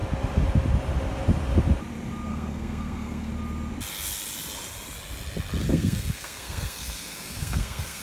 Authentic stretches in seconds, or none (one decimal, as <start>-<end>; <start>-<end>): 0.0-2.3; 3.3-5.6